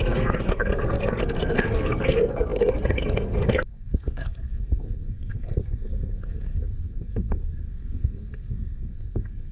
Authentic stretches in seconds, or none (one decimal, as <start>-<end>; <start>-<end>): none